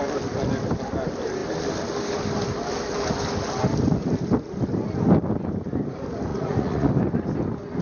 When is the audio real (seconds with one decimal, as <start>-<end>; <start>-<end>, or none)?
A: 0.0-6.3; 6.9-7.8